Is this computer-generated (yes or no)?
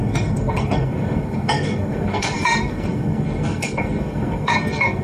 yes